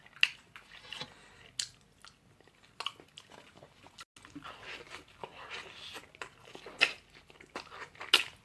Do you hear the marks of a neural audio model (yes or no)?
no